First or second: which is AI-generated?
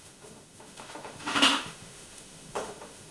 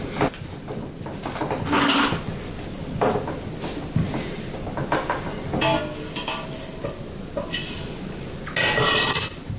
first